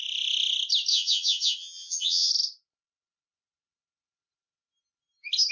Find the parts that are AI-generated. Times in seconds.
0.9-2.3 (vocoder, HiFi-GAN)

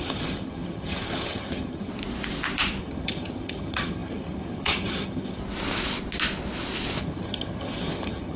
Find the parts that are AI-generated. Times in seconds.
0.0-1.9 (vocoder, HiFi-GAN); 2.8-5.4; 7.0-8.4

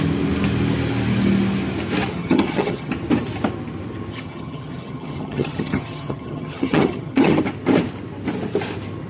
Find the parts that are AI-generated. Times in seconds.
2.1-2.9 (vocoder, HiFi-GAN); 4.1-7.4

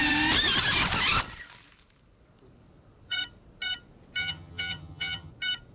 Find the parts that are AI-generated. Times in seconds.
4.2-5.3 (vocoder, HiFi-GAN)

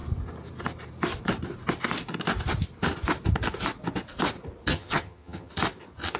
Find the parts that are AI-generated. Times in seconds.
4.7-5.5 (vocoder, HiFi-GAN)

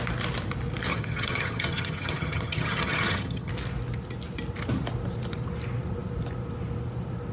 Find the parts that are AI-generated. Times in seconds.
0.9-3.5 (vocoder, HiFi-GAN)